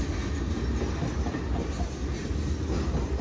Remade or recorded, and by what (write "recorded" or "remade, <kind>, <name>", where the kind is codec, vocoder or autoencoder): recorded